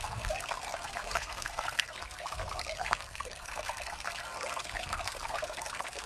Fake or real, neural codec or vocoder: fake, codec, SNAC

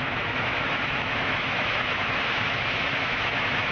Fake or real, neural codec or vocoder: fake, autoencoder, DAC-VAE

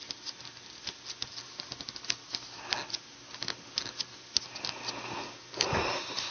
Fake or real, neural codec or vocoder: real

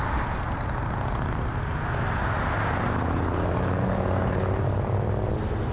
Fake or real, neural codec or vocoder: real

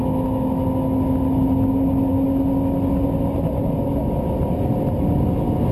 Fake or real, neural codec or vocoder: real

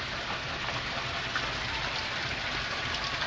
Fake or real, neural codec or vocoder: real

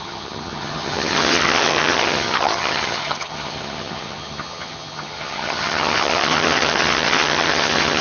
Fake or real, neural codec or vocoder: fake, vocoder, HiFi-GAN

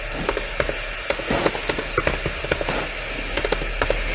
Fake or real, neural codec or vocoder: real